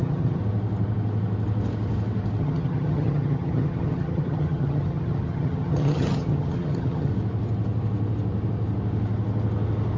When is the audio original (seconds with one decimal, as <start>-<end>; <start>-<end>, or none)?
0.4-2.4; 7.1-10.0